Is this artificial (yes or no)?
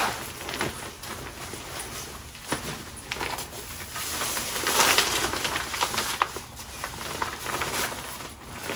no